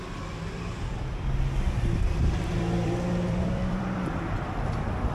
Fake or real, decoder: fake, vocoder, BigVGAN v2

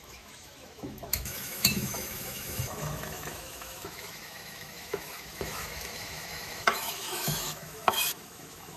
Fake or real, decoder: fake, autoencoder, DAC-VAE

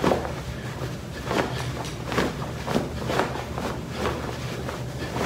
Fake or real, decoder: real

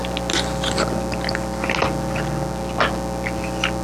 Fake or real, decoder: real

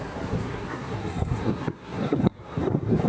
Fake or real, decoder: fake, codec, SNAC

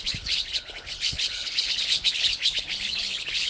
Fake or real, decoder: fake, codec, HILCodec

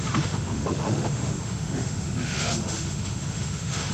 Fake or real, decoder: fake, autoencoder, DAC-VAE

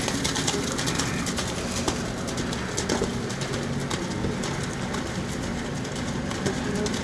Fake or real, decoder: real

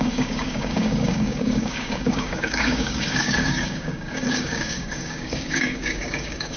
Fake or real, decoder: fake, codec, DAC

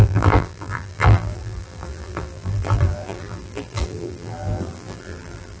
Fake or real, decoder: fake, vocoder, BigVGAN v2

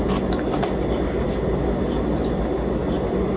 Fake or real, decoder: real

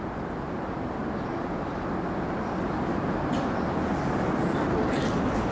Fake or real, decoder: real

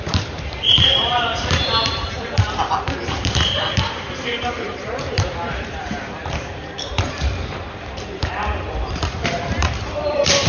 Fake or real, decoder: fake, vocoder, BigVGAN v2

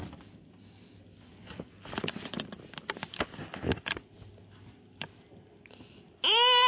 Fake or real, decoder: real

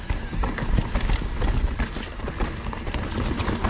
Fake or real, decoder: real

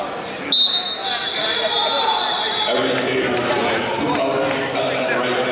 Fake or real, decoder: real